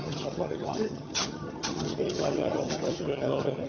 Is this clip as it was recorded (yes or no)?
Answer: no